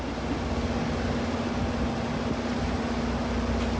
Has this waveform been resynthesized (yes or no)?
no